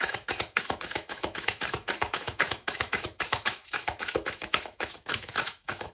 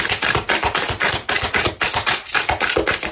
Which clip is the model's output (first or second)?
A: first